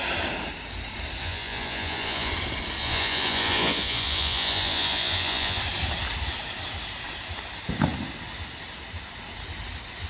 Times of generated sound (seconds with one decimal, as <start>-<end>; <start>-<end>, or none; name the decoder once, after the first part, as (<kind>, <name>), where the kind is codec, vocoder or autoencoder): 1.2-2.3 (vocoder, Vocos); 2.8-5.6